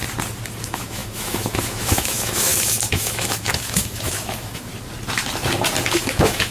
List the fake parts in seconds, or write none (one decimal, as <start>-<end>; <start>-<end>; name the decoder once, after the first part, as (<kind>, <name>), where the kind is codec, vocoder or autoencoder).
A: 0.6-4.7 (autoencoder, DAC-VAE); 5.9-6.5